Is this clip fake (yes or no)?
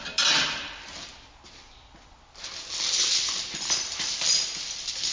no